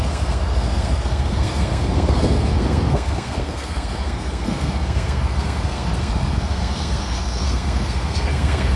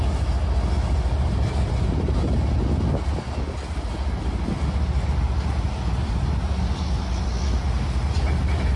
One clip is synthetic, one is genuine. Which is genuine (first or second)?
second